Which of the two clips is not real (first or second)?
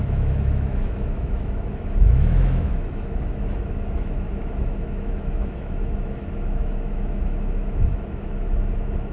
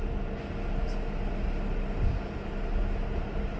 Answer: first